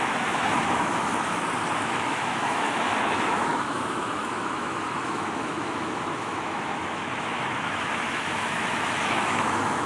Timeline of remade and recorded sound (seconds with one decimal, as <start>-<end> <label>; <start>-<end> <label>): 0.0-1.1 remade; 1.1-1.9 recorded; 1.9-9.9 remade